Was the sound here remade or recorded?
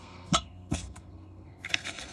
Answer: remade